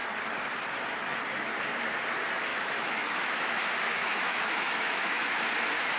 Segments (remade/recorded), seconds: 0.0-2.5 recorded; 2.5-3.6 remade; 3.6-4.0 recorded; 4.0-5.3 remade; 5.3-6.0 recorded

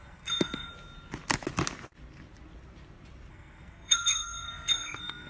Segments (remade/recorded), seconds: 0.0-0.7 remade; 0.7-3.3 recorded; 3.3-5.3 remade

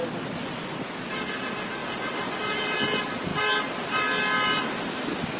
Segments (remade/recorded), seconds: 0.0-5.4 recorded